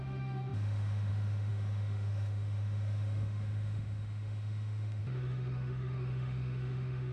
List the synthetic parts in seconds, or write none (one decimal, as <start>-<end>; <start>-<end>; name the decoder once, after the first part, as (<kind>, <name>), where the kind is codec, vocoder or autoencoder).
0.0-7.1 (autoencoder, DAC-VAE)

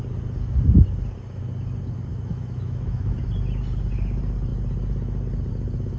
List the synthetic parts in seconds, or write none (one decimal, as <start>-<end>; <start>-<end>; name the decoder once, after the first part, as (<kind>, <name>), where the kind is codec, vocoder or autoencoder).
2.1-3.2 (autoencoder, DAC-VAE)

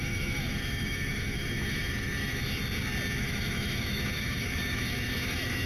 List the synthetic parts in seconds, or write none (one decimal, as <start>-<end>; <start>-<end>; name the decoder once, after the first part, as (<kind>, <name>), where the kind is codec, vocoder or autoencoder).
0.0-2.6 (autoencoder, DAC-VAE); 3.2-5.7

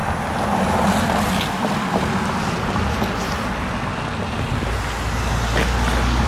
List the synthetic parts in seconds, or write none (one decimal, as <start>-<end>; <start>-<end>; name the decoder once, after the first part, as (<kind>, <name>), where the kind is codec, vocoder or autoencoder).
none

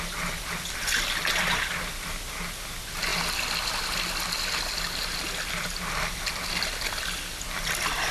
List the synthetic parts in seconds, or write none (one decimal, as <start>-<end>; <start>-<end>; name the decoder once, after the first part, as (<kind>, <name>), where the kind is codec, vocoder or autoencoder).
none

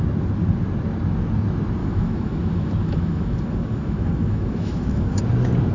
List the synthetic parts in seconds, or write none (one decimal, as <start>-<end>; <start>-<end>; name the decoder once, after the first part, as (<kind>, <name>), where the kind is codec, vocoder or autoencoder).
1.8-5.2 (autoencoder, DAC-VAE)